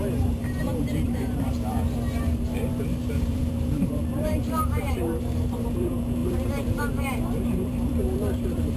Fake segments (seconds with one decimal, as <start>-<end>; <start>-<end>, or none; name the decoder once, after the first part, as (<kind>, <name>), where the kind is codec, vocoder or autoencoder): 0.0-8.8 (vocoder, BigVGAN v2)